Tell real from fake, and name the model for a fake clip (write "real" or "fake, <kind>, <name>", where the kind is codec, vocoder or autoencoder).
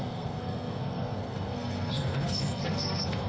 fake, codec, SNAC